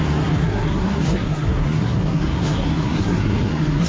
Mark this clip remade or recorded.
remade